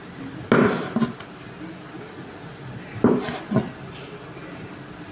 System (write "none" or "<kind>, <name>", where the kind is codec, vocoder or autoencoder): none